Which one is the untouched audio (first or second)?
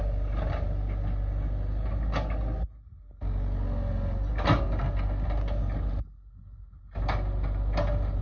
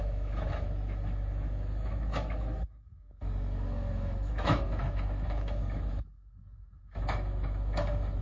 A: first